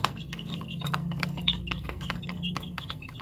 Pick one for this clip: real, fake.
fake